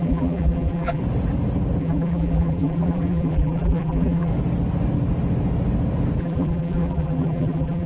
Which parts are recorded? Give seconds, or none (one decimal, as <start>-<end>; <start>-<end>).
1.0-1.8; 4.3-6.2